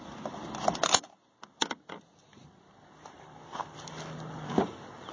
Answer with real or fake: real